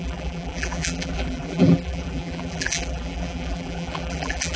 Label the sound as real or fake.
fake